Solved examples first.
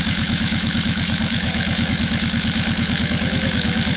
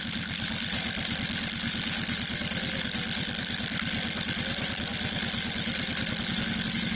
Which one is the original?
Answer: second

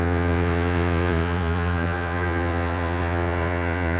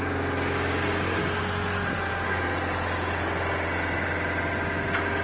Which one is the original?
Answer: second